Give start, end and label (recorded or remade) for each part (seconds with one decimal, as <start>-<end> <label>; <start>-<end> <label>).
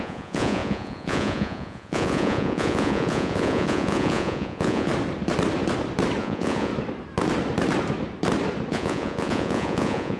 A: 0.0-4.9 remade; 4.9-6.2 recorded; 6.2-6.7 remade; 6.7-8.7 recorded; 8.7-10.2 remade